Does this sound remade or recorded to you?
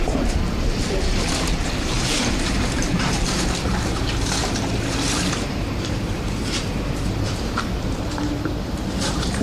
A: remade